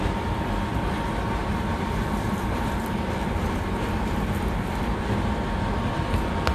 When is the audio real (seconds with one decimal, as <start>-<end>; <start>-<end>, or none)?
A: 0.0-1.4; 5.0-6.5